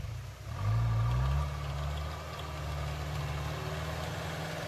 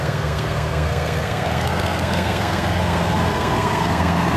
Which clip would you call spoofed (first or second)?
second